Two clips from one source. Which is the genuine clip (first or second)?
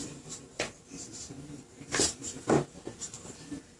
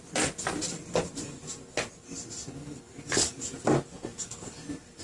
second